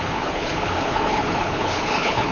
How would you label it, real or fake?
fake